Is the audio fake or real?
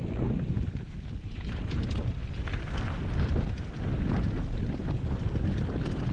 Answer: real